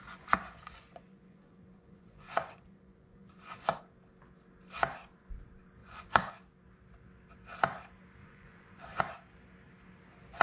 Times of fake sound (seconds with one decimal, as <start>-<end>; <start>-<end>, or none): 0.0-3.8; 5.8-6.3; 8.2-9.0